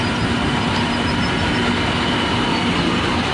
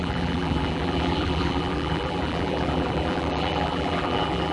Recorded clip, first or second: first